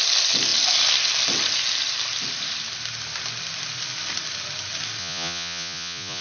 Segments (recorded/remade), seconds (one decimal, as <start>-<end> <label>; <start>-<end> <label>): 0.0-5.0 recorded; 5.0-6.2 remade